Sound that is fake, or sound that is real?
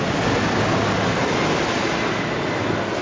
real